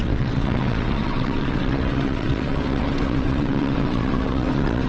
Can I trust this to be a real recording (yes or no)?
no